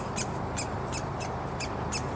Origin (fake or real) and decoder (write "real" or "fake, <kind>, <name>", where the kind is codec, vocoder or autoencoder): fake, vocoder, BigVGAN v2